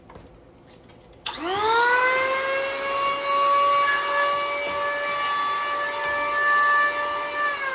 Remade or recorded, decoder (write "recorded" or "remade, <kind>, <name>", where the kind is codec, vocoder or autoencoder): recorded